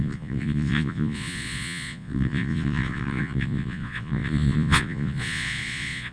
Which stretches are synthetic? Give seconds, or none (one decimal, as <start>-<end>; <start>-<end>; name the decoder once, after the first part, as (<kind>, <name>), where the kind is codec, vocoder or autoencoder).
0.0-6.1 (vocoder, Vocos)